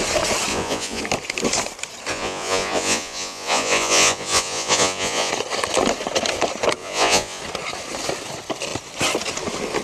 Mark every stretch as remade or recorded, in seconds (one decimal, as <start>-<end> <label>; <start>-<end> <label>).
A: 0.0-0.5 recorded; 0.5-1.0 remade; 1.0-2.1 recorded; 2.1-5.3 remade; 5.3-6.8 recorded; 6.8-7.4 remade; 7.4-9.8 recorded